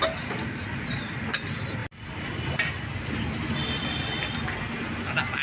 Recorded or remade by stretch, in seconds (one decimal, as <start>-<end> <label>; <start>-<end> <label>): 0.0-5.4 recorded